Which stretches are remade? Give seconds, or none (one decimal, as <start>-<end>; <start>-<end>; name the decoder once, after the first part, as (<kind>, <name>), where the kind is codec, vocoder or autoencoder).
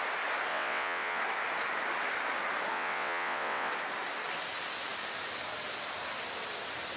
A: 0.5-1.2 (vocoder, WaveNeXt); 2.7-3.7